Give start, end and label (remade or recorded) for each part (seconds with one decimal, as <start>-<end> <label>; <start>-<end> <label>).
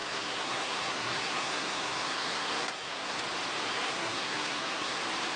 0.0-3.2 remade; 3.2-3.6 recorded; 3.6-5.0 remade; 5.0-5.4 recorded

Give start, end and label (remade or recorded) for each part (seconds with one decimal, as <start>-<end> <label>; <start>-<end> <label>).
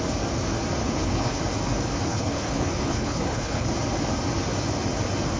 0.0-0.8 recorded; 0.8-1.4 remade; 1.4-2.1 recorded; 2.1-3.7 remade; 3.7-5.4 recorded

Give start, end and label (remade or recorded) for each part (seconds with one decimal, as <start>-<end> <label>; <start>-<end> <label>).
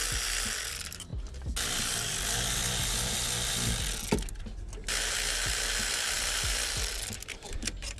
0.0-0.7 recorded; 0.7-1.1 remade; 1.1-5.9 recorded; 5.9-8.0 remade